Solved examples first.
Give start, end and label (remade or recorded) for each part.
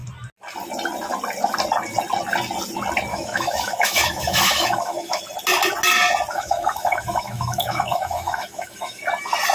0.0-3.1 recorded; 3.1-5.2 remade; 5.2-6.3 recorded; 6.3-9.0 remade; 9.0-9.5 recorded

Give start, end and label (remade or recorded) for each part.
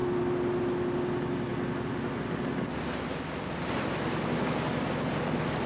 0.0-5.7 recorded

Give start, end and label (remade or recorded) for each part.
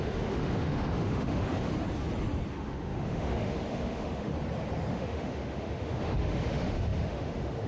0.0-1.7 remade; 1.7-2.5 recorded; 2.5-4.3 remade; 4.3-4.9 recorded; 4.9-7.7 remade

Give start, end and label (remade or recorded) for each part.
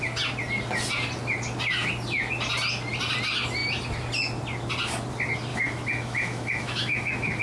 0.0-5.5 recorded; 5.5-7.4 remade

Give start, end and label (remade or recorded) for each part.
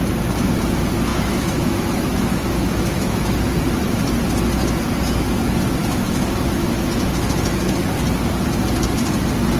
0.0-1.1 recorded; 1.1-3.6 remade; 3.6-5.8 recorded; 5.8-7.8 remade; 7.8-9.6 recorded